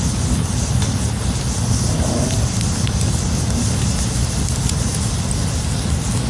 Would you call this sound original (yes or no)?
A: yes